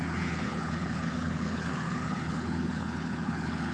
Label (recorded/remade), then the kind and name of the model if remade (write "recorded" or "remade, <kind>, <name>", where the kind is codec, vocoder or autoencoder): remade, codec, HILCodec